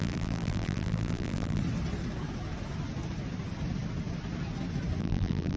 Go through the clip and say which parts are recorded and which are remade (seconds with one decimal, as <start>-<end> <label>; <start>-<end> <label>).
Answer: 0.0-1.6 remade; 1.6-5.0 recorded; 5.0-5.6 remade